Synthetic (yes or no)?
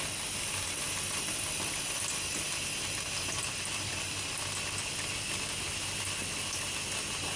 no